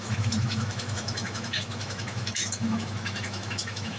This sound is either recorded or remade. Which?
remade